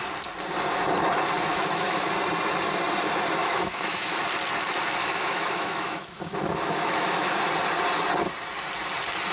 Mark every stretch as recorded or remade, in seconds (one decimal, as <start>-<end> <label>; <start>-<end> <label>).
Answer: 0.0-1.5 recorded; 1.5-2.1 remade; 2.1-3.4 recorded; 3.4-4.2 remade; 4.2-5.0 recorded; 5.0-7.4 remade; 7.4-9.3 recorded